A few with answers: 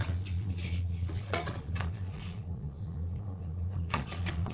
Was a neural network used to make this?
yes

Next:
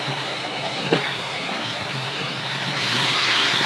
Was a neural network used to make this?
yes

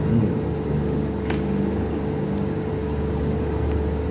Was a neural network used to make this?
yes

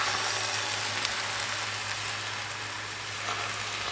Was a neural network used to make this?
no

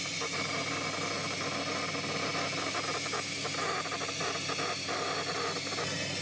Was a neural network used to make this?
no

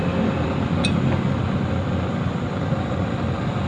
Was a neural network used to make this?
no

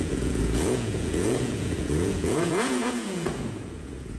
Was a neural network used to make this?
yes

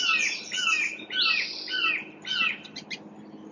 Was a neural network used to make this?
no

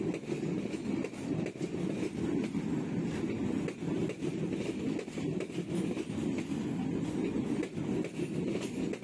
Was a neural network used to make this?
no